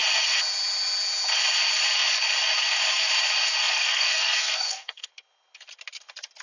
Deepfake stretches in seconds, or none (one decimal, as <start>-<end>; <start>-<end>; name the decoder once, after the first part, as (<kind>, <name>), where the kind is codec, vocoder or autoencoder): 3.6-5.1 (codec, SNAC)